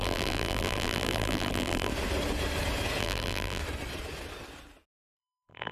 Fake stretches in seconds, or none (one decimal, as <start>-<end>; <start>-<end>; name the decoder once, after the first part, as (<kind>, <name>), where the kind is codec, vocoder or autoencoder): 0.0-1.9 (vocoder, BigVGAN v2); 3.0-3.6; 4.9-5.7